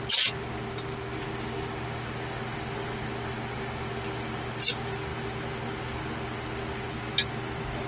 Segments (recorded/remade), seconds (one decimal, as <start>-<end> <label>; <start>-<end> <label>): 0.0-7.9 recorded

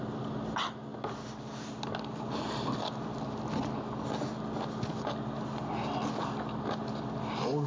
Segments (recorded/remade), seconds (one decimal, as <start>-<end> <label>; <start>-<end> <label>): 0.0-7.7 recorded

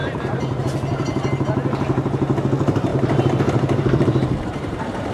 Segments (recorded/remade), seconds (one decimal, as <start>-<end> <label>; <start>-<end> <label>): 0.0-0.6 remade; 0.6-2.9 recorded; 2.9-5.1 remade

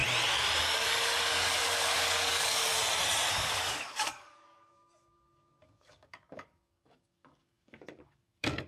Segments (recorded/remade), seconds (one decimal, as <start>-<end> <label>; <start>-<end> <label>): 0.0-0.6 recorded; 0.6-2.7 remade; 2.7-3.3 recorded; 3.3-8.7 remade

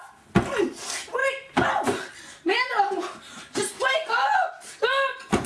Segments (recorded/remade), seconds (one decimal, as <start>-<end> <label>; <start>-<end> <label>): 0.0-5.5 recorded